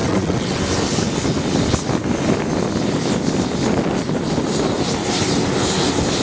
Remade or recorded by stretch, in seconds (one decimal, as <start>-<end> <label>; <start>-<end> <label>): 0.0-0.6 remade; 0.6-6.2 recorded